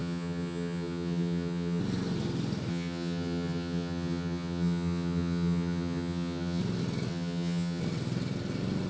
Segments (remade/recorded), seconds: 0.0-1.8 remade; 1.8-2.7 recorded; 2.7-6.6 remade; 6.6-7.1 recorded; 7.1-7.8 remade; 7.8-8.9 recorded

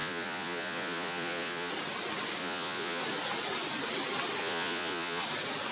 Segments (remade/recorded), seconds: 0.0-1.7 remade; 1.7-2.4 recorded; 2.4-3.0 remade; 3.0-4.4 recorded; 4.4-5.2 remade; 5.2-5.7 recorded

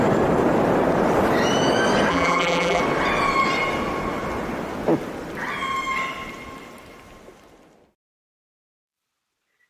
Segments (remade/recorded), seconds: 0.0-2.1 recorded; 2.1-2.8 remade; 2.8-9.7 recorded

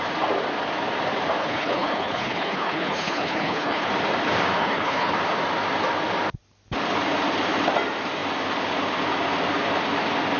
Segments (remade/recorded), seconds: 0.0-1.4 recorded; 1.4-3.9 remade; 3.9-4.6 recorded; 4.6-5.1 remade; 5.1-10.4 recorded

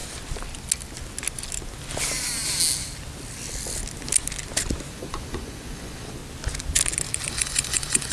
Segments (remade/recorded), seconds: 0.0-4.9 recorded; 4.9-6.2 remade; 6.2-7.3 recorded; 7.3-8.1 remade

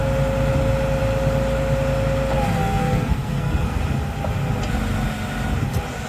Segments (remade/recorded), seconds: 0.0-2.6 recorded; 2.6-3.8 remade; 3.8-6.1 recorded

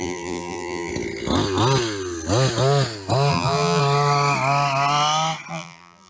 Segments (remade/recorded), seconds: 0.0-0.9 remade; 0.9-3.3 recorded; 3.3-3.8 remade; 3.8-5.5 recorded; 5.5-6.1 remade